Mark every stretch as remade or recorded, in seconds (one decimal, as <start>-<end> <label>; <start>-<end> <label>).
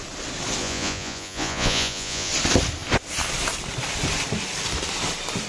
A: 0.0-0.6 recorded; 0.6-2.3 remade; 2.3-5.5 recorded